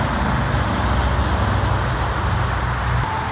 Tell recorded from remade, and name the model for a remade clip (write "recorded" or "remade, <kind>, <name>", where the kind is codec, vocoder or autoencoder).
recorded